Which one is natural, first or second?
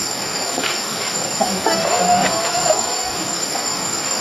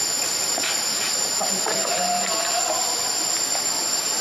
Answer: second